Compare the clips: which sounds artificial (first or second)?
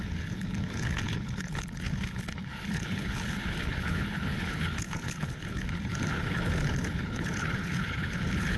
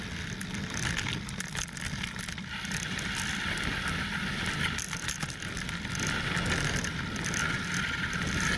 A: first